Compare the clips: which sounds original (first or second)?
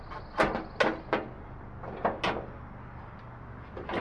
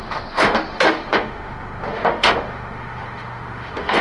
first